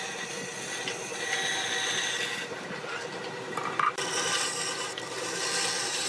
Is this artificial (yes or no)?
no